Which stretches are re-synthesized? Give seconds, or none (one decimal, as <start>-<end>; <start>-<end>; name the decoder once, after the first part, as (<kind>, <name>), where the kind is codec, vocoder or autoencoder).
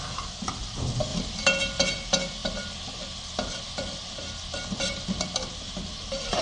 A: none